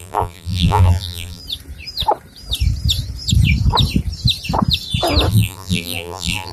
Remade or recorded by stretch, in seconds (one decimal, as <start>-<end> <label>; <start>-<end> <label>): 0.0-1.4 remade; 1.4-5.3 recorded; 5.3-6.5 remade